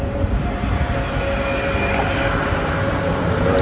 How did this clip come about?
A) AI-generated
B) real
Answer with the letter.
B